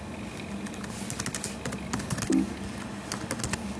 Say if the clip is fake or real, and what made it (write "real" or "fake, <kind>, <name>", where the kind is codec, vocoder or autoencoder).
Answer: real